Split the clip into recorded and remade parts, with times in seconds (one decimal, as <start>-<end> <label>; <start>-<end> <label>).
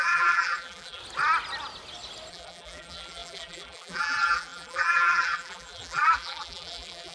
0.0-1.0 remade; 1.0-2.3 recorded; 2.3-7.1 remade